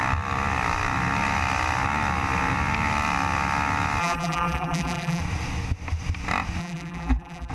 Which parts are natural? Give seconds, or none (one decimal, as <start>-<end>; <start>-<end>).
0.0-4.0; 5.2-6.6